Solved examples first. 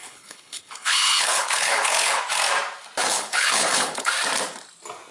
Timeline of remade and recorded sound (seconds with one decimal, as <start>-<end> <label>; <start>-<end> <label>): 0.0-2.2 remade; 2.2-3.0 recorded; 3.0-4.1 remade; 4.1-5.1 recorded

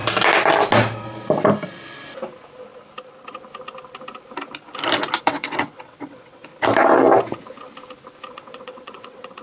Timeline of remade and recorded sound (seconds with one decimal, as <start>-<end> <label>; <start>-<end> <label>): 0.0-5.2 recorded; 5.2-6.5 remade; 6.5-8.3 recorded; 8.3-9.4 remade

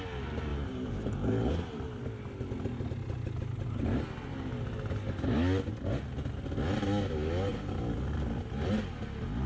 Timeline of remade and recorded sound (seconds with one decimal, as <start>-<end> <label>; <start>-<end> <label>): 0.0-0.5 recorded; 0.5-1.5 remade; 1.5-9.5 recorded